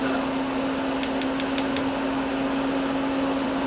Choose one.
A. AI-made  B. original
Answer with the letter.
B